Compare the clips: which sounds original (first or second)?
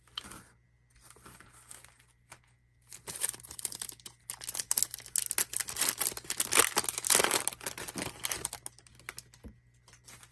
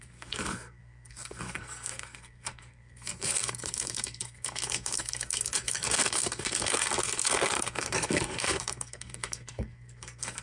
first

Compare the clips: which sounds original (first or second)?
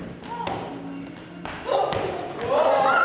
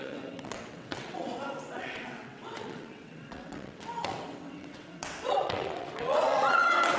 first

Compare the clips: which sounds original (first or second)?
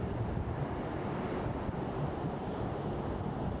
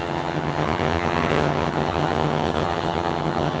first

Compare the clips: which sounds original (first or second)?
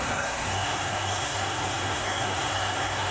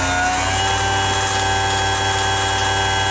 second